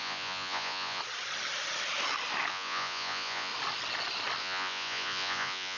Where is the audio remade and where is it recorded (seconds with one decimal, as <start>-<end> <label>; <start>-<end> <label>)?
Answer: 0.0-1.0 remade; 1.0-2.5 recorded; 2.5-3.5 remade; 3.5-4.4 recorded; 4.4-5.8 remade